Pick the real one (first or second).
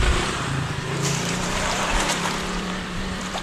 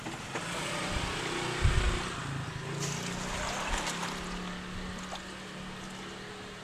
second